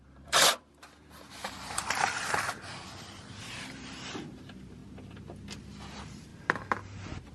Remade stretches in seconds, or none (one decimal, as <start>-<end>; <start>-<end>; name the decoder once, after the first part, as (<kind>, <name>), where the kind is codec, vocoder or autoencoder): 0.0-4.8 (vocoder, BigVGAN v2); 5.6-6.3